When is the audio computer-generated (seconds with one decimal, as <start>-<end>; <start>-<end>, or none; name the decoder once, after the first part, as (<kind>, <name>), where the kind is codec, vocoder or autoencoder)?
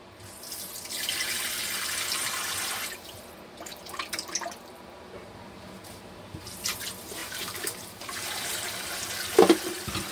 3.7-6.6 (vocoder, BigVGAN v2); 7.2-9.2